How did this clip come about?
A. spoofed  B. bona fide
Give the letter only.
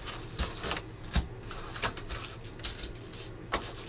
B